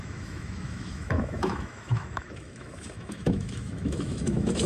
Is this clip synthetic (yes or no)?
yes